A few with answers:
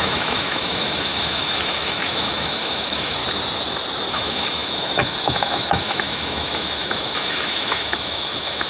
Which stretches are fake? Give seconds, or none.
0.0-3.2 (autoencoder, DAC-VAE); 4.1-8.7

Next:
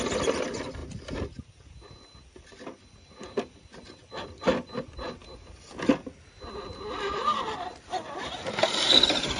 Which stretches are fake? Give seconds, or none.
none

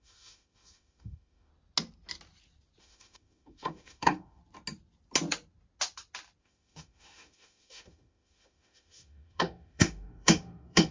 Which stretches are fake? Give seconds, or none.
0.0-1.5 (autoencoder, DAC-VAE); 2.8-4.4; 6.4-10.9

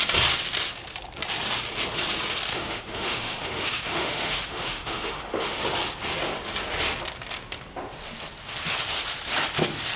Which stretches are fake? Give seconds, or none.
2.5-5.6 (autoencoder, DAC-VAE)

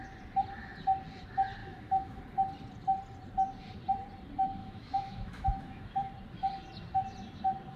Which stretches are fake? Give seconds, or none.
1.6-2.2 (autoencoder, DAC-VAE); 4.6-6.1

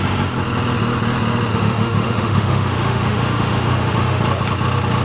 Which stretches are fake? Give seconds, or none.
1.5-4.2 (autoencoder, DAC-VAE)

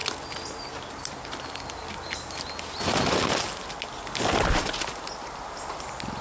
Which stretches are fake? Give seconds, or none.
none

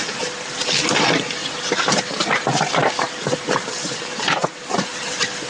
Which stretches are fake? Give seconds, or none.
none